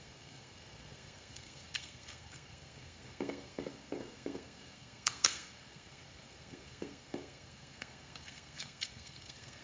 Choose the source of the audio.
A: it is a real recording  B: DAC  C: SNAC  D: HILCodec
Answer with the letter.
C